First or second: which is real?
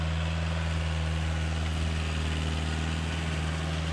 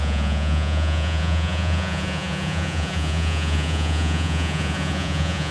first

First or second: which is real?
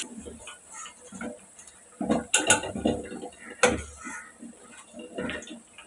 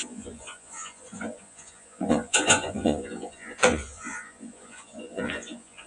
first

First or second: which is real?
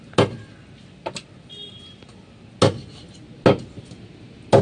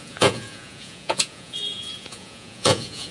first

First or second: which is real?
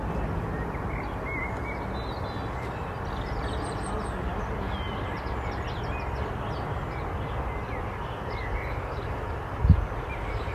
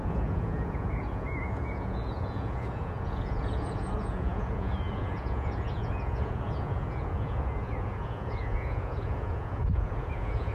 first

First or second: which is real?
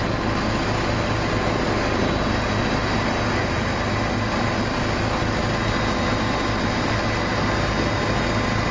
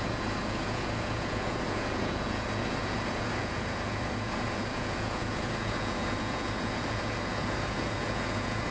first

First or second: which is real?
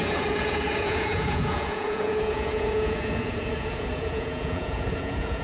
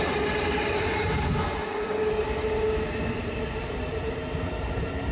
second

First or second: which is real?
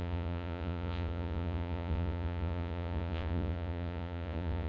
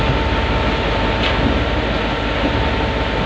second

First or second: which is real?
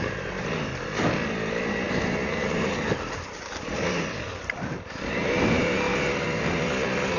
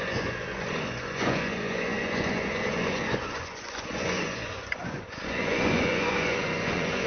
first